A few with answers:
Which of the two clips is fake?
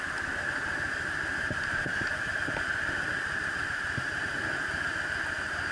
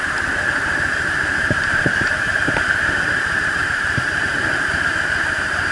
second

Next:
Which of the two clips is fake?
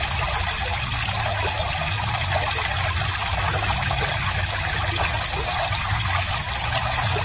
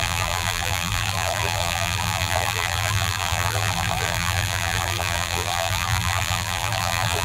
second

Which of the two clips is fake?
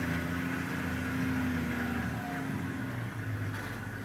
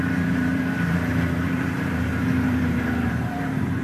second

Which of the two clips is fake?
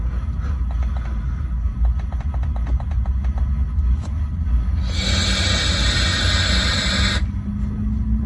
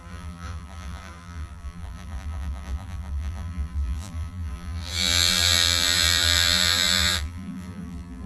second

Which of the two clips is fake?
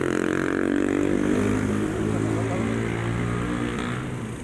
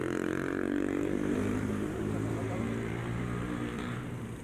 second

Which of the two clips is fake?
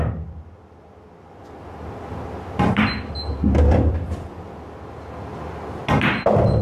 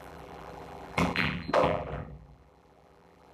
second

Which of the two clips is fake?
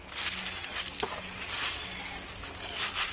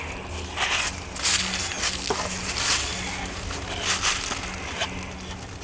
first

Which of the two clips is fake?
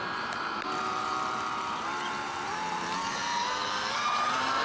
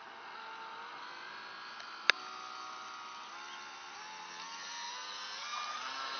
first